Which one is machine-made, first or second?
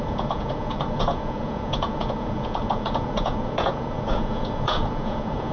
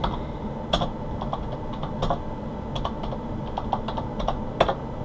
first